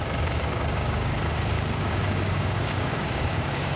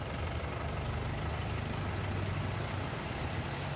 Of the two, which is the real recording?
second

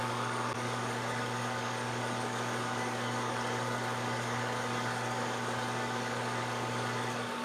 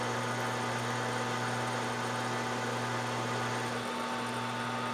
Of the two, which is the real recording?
second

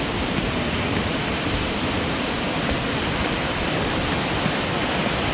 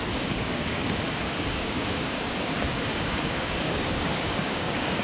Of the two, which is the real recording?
first